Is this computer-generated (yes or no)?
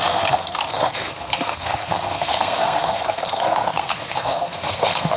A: yes